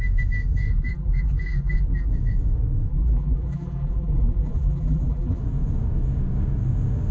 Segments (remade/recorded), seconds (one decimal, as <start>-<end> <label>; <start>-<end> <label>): 0.0-0.7 recorded; 0.7-2.1 remade; 2.1-2.9 recorded; 2.9-5.4 remade; 5.4-7.1 recorded